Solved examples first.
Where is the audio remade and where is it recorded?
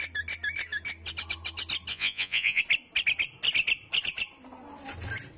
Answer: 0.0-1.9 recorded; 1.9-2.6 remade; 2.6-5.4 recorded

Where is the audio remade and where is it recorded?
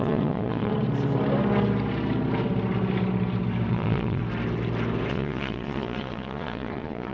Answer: 0.0-0.7 remade; 0.7-3.7 recorded; 3.7-4.2 remade; 4.2-5.1 recorded; 5.1-7.1 remade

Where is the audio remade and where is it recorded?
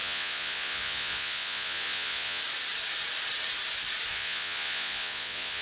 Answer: 0.0-2.4 remade; 2.4-4.1 recorded; 4.1-5.6 remade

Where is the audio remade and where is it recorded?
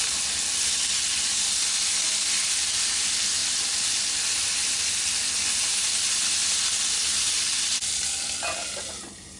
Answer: 0.0-9.4 recorded